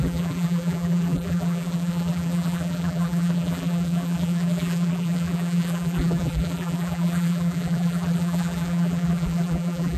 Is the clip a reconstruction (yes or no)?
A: yes